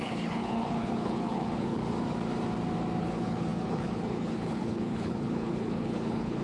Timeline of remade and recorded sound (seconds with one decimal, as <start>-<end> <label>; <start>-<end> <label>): 0.0-1.8 remade; 1.8-3.0 recorded; 3.0-6.4 remade